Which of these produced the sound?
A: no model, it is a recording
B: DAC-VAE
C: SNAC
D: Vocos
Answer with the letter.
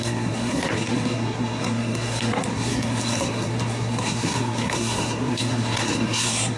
C